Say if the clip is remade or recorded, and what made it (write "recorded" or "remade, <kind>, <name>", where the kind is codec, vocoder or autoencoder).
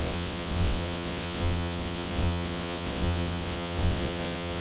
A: remade, vocoder, WaveNeXt